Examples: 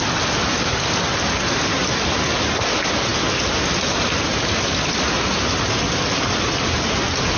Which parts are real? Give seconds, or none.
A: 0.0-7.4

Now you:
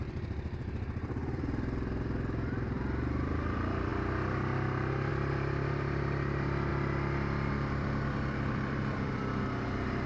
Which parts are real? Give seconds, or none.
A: 3.9-5.1; 6.7-7.5

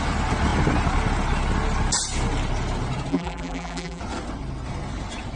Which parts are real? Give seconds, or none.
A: 0.0-3.1; 4.0-5.4

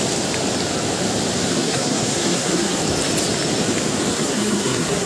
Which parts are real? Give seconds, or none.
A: 0.0-1.6; 2.8-4.1

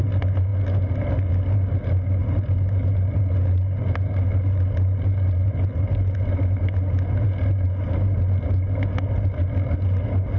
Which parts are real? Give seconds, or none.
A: 0.0-10.4

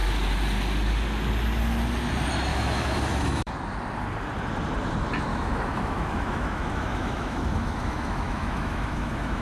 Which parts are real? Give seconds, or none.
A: 0.0-2.5; 3.5-5.3

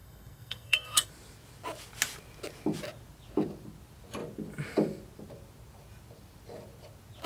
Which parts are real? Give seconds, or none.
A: 1.1-7.3

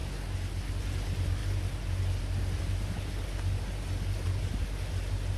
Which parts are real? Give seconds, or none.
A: 0.0-5.4